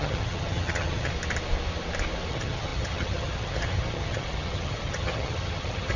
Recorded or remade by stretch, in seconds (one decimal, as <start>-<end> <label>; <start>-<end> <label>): 0.0-1.1 remade; 1.1-2.3 recorded; 2.3-6.0 remade